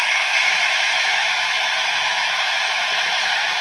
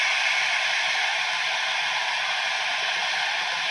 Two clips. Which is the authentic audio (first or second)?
second